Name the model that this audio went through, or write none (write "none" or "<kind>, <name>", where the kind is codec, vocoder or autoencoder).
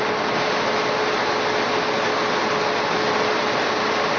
none